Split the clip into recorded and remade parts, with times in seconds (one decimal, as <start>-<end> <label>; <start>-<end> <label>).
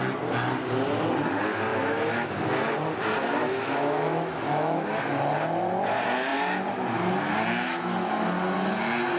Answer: 0.0-1.7 recorded; 1.7-2.3 remade; 2.3-3.4 recorded; 3.4-5.0 remade; 5.0-9.2 recorded